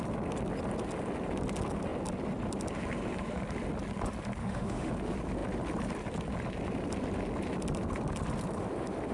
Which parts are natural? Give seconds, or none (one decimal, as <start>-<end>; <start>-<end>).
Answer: 0.0-4.4; 4.9-9.1